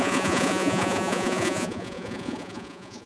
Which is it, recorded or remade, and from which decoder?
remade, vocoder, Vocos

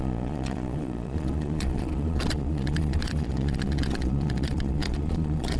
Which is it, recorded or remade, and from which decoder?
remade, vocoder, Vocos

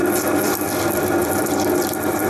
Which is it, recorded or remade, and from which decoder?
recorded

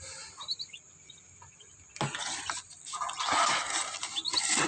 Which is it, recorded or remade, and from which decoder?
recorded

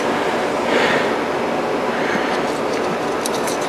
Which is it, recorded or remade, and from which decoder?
recorded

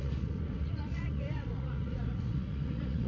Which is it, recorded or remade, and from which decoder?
remade, vocoder, Vocos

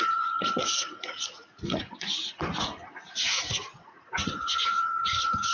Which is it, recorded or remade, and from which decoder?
remade, vocoder, Vocos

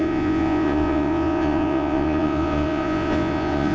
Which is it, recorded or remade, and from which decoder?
remade, vocoder, Vocos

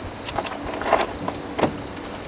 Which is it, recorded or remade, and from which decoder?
recorded